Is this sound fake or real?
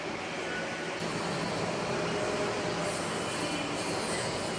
real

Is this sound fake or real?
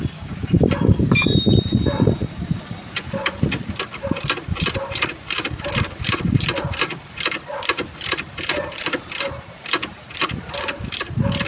fake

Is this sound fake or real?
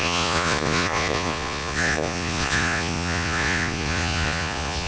fake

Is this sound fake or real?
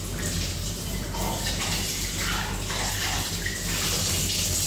real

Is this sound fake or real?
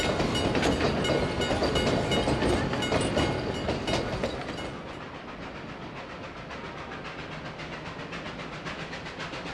real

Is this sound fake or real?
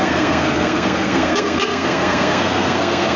fake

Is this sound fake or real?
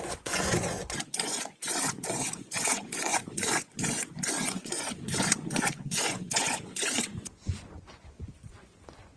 fake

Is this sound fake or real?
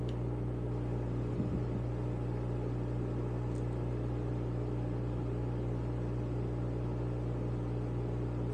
real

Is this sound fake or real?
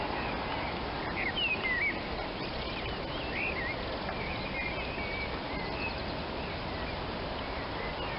real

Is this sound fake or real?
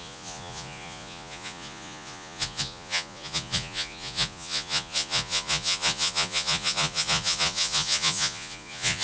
fake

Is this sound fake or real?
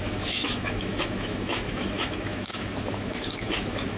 fake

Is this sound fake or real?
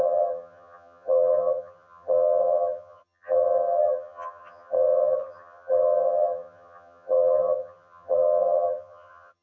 fake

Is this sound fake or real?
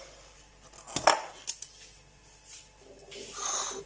real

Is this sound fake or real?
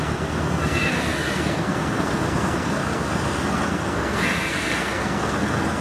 fake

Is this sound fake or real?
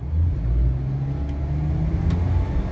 real